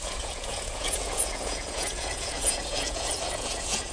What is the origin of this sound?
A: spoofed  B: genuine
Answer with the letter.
A